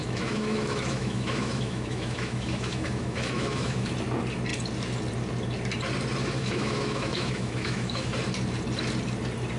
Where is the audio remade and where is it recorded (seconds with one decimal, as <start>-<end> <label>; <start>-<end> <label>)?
0.0-3.9 remade; 3.9-6.2 recorded; 6.2-8.1 remade; 8.1-9.6 recorded